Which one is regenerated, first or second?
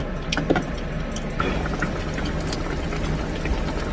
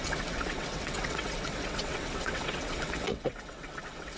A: second